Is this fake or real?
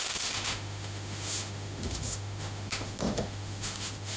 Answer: fake